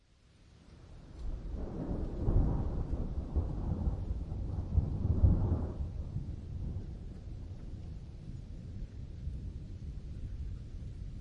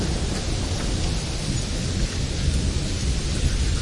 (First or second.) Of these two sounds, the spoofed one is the first